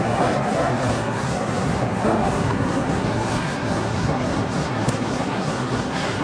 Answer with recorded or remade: remade